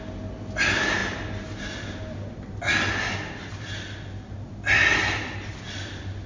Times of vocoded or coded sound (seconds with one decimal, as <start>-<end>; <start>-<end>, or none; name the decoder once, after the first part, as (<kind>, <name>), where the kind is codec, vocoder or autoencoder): none